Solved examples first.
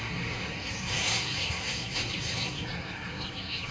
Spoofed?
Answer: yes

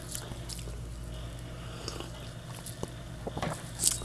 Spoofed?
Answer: no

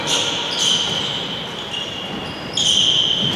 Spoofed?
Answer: no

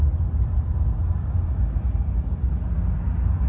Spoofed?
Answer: no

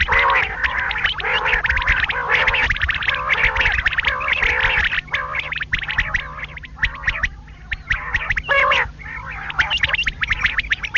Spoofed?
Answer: no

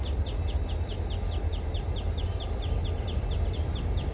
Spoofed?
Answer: no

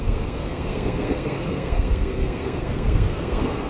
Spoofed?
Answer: yes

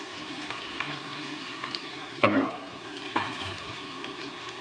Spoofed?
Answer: yes